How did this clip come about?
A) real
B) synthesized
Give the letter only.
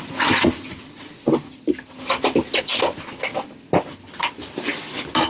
A